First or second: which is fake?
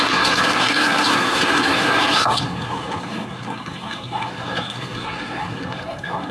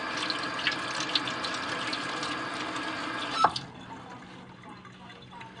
first